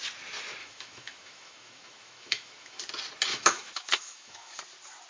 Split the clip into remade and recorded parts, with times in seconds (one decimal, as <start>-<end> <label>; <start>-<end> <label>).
0.0-0.6 recorded; 0.6-2.8 remade; 2.8-3.3 recorded; 3.3-4.6 remade; 4.6-5.1 recorded